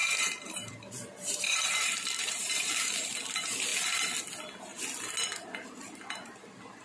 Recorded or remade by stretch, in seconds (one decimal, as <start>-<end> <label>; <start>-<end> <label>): 0.0-2.7 remade; 2.7-6.8 recorded